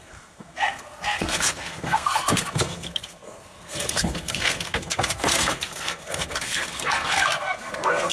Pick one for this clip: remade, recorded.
remade